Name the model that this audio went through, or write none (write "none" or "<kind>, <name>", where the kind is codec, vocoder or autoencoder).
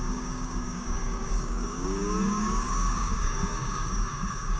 codec, DAC